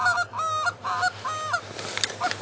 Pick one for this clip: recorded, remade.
recorded